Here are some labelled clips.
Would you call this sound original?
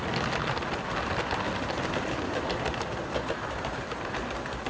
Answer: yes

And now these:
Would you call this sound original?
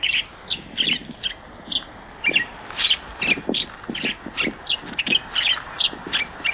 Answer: yes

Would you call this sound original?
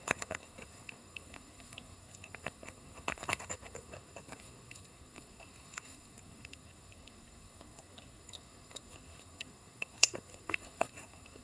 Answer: no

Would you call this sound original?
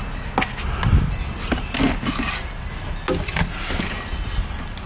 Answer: yes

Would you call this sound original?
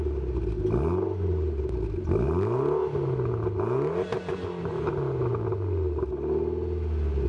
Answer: yes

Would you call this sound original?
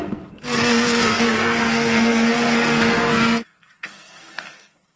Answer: no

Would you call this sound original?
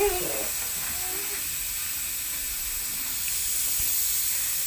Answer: yes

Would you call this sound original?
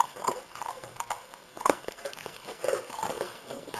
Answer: no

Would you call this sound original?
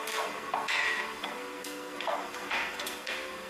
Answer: no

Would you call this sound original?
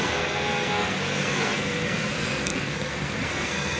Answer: no